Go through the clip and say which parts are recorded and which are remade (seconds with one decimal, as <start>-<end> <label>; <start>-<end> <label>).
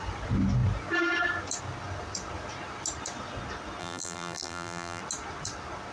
0.0-3.8 recorded; 3.8-5.0 remade; 5.0-5.9 recorded